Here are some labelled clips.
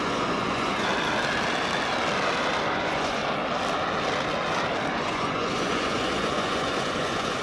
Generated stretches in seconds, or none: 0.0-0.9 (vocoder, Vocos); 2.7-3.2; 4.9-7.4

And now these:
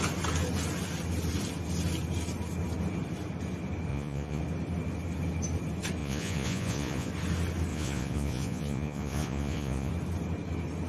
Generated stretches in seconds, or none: 3.9-4.4 (vocoder, Vocos); 6.0-7.1; 7.7-9.9

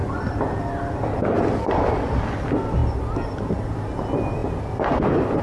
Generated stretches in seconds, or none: none

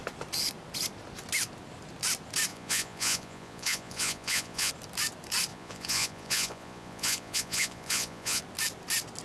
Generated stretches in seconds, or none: 2.5-4.7 (vocoder, Vocos); 5.5-8.4

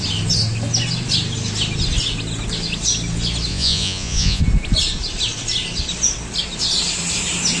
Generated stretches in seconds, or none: 3.5-4.4 (vocoder, Vocos)

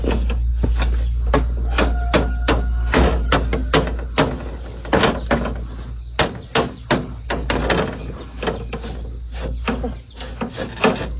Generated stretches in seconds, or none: none

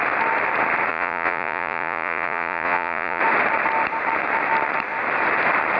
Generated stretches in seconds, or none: 0.9-3.2 (vocoder, Vocos)

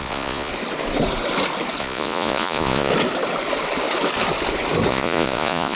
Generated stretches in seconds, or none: 0.0-0.5 (vocoder, Vocos); 1.8-2.9; 4.9-5.8